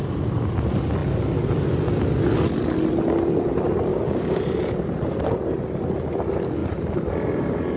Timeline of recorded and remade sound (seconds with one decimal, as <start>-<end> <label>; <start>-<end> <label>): 0.0-3.9 recorded; 3.9-4.4 remade; 4.4-7.8 recorded

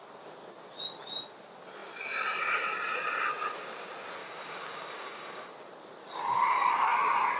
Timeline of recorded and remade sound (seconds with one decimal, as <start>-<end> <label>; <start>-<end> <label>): 0.0-4.2 recorded; 4.2-5.5 remade; 5.5-6.0 recorded; 6.0-6.7 remade; 6.7-7.4 recorded

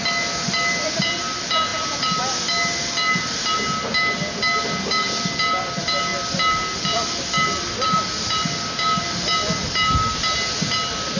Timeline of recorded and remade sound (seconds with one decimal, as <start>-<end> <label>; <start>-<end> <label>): 0.0-11.2 recorded

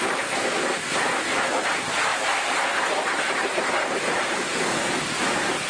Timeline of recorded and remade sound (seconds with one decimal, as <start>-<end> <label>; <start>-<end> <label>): 0.0-5.7 recorded